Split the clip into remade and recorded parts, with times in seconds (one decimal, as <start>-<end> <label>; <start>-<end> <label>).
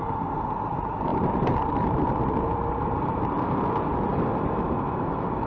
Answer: 0.0-1.1 recorded; 1.1-3.3 remade; 3.3-5.5 recorded